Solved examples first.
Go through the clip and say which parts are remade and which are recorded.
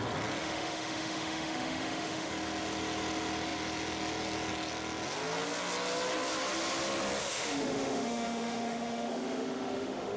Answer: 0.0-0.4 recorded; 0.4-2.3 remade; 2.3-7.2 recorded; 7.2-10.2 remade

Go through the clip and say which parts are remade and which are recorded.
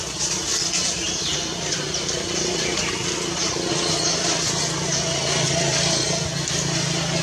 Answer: 0.0-7.2 recorded